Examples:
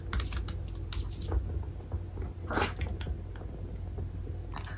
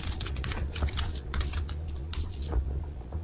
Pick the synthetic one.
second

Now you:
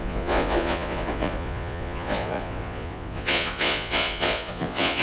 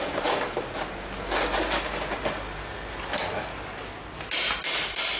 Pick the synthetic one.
first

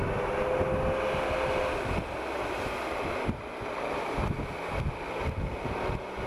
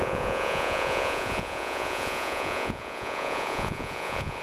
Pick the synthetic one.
second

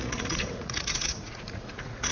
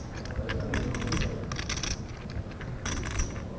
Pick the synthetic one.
first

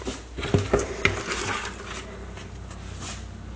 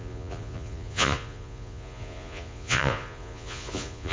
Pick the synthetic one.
second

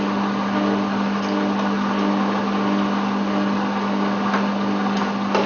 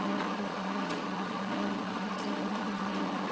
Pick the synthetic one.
second